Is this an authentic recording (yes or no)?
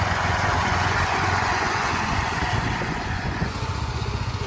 no